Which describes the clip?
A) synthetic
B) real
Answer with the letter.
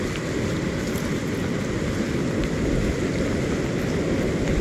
B